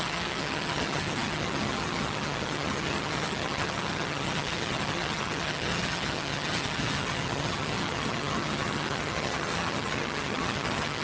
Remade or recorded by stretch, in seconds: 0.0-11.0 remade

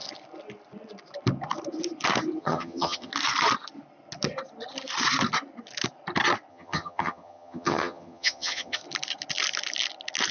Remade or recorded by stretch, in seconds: 0.0-2.4 recorded; 2.4-3.1 remade; 3.1-6.5 recorded; 6.5-8.8 remade; 8.8-10.3 recorded

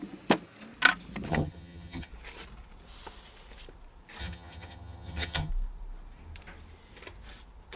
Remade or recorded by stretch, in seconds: 0.0-1.3 recorded; 1.3-2.1 remade; 2.1-4.2 recorded; 4.2-5.5 remade; 5.5-7.8 recorded

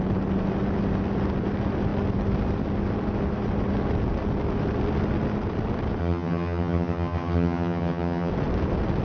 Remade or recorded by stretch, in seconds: 0.0-6.0 recorded; 6.0-8.3 remade; 8.3-9.0 recorded